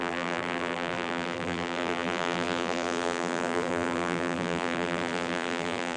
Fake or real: fake